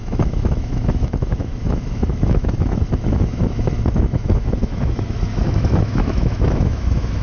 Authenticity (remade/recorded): remade